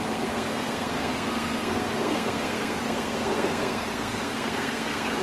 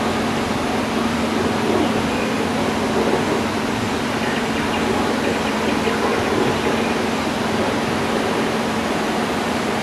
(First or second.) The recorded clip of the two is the second